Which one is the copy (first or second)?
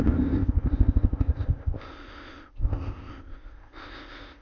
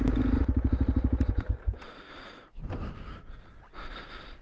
first